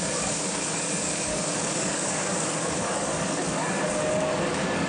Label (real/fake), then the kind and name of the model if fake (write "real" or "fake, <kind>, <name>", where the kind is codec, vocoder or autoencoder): fake, codec, DAC